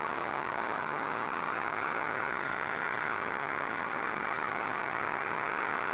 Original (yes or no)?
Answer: no